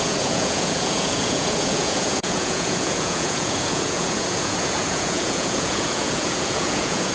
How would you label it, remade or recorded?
remade